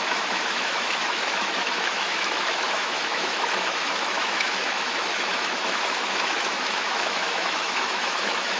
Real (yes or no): no